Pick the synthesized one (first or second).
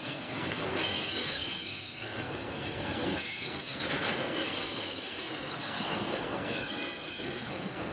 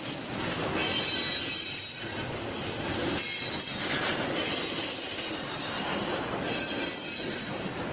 first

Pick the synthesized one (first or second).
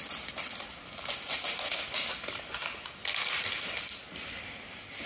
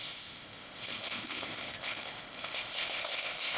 second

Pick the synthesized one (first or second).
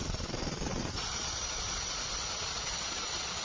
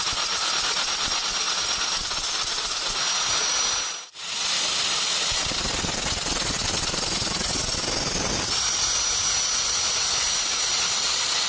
first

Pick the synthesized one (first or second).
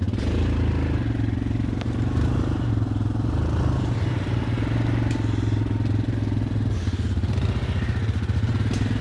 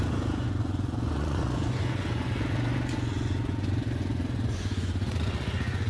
second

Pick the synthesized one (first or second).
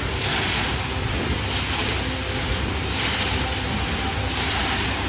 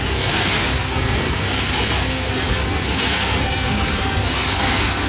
second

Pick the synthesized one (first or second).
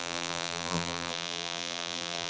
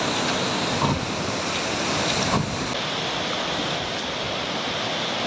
first